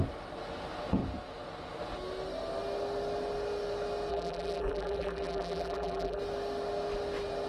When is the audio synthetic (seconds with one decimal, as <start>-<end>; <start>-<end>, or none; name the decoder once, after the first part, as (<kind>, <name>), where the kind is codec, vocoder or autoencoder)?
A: 4.1-6.2 (vocoder, BigVGAN v2)